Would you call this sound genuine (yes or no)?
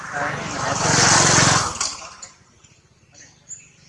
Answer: yes